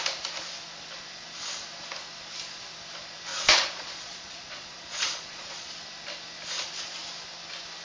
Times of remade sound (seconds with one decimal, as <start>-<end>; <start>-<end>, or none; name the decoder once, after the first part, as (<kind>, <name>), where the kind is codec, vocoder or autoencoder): 3.3-5.7 (vocoder, Vocos)